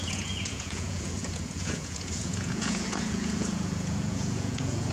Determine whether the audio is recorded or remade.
remade